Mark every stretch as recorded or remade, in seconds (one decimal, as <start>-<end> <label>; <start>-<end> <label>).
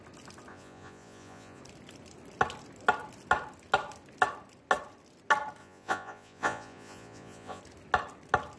0.0-0.5 recorded; 0.5-1.6 remade; 1.6-5.6 recorded; 5.6-7.6 remade; 7.6-8.6 recorded